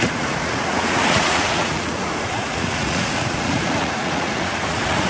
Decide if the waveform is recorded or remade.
remade